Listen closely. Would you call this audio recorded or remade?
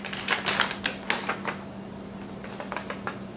recorded